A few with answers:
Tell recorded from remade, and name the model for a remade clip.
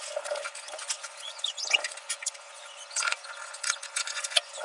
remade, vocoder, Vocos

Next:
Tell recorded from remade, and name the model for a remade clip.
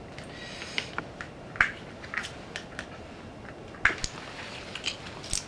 recorded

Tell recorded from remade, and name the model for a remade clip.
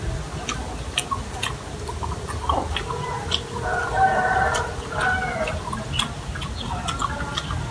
recorded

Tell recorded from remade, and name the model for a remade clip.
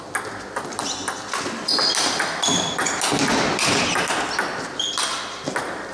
recorded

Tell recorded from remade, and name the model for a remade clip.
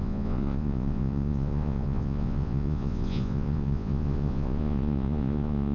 remade, vocoder, Vocos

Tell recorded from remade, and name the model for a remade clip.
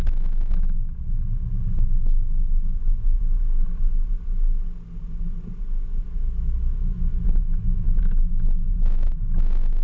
recorded